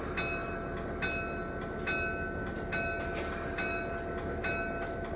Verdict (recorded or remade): recorded